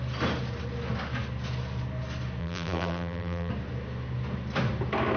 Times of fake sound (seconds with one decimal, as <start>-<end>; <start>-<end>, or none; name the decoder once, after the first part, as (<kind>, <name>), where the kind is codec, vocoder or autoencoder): 2.4-3.5 (vocoder, BigVGAN v2)